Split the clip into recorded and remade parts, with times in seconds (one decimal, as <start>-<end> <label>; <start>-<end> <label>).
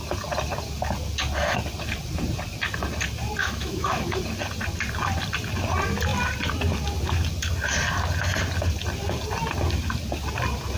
0.0-3.4 recorded; 3.4-4.2 remade; 4.2-10.8 recorded